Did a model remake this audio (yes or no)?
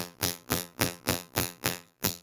yes